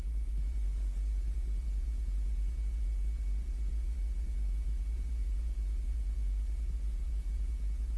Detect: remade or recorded remade